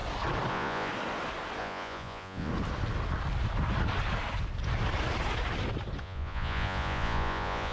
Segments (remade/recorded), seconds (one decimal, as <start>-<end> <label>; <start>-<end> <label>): 0.0-0.5 recorded; 0.5-0.9 remade; 0.9-1.6 recorded; 1.6-2.5 remade; 2.5-6.0 recorded; 6.0-7.7 remade